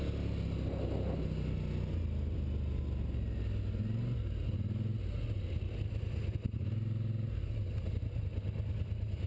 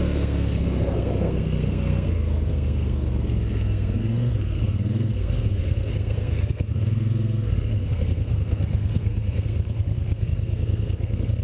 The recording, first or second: first